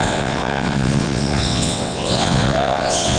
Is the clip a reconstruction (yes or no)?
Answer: yes